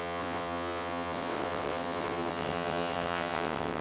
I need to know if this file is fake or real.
fake